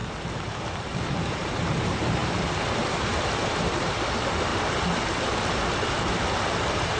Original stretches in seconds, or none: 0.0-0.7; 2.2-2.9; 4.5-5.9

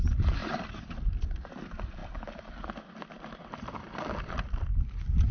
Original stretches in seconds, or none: 0.0-5.3